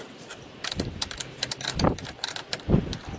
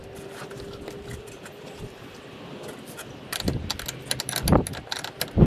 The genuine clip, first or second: second